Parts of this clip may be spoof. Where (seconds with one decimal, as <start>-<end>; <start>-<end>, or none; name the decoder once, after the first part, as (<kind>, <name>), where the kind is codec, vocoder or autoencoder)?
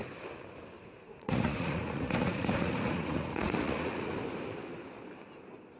0.8-4.1 (vocoder, Vocos)